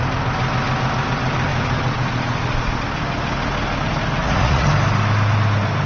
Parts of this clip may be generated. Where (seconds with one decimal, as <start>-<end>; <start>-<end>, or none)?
4.2-4.7

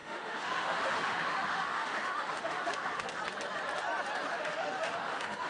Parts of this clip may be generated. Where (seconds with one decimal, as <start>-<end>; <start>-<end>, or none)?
0.0-3.2; 4.3-5.5

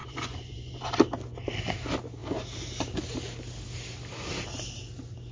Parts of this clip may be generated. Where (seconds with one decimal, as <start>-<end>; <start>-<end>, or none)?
0.0-0.9

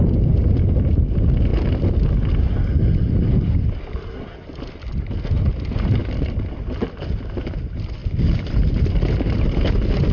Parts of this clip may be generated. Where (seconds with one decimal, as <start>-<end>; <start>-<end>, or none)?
none

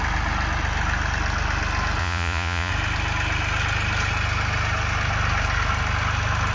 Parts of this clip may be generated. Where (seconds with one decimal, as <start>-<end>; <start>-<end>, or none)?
2.0-2.7

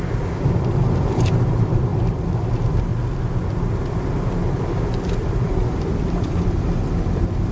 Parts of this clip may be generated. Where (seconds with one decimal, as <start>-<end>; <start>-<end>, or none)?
0.0-2.9; 4.6-7.5

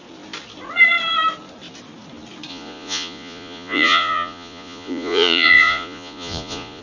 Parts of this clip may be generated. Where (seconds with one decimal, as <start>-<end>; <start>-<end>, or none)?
2.5-6.8

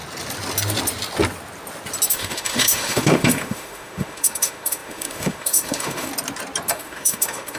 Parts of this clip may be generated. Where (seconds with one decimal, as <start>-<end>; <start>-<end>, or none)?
2.1-6.1; 6.7-7.6